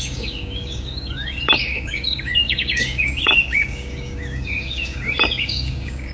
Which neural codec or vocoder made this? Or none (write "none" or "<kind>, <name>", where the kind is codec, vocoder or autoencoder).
codec, DAC